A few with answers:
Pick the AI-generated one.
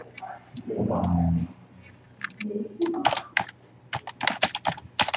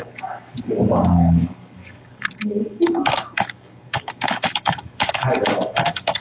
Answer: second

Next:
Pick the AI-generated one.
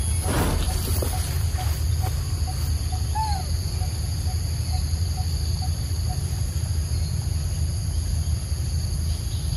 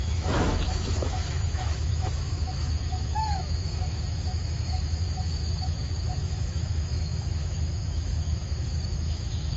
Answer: second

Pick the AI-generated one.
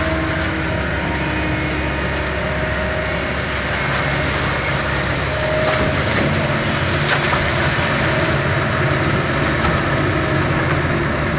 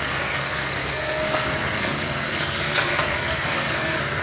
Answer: second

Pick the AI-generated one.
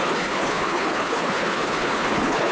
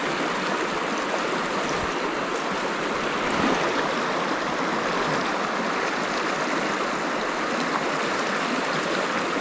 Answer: first